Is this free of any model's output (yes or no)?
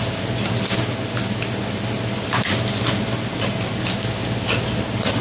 yes